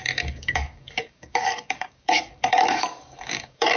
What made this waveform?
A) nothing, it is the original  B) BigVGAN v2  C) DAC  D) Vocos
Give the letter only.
C